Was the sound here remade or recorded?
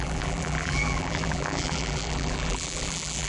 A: remade